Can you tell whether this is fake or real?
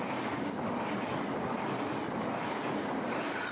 real